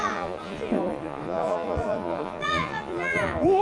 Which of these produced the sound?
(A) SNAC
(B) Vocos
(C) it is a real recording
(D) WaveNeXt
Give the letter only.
B